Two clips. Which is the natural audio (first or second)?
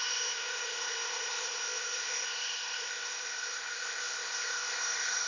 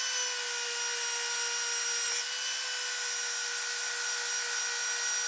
second